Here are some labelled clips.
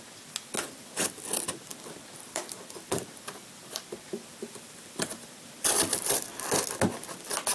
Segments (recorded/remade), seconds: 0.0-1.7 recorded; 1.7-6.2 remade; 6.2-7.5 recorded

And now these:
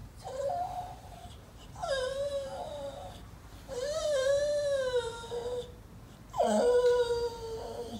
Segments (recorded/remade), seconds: 0.0-4.3 remade; 4.3-8.0 recorded